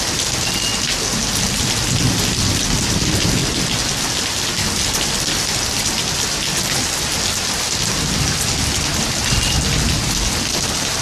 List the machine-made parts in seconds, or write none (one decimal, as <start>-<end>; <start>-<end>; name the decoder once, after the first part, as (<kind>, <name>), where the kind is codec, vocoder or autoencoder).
none